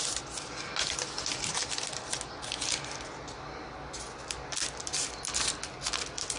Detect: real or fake real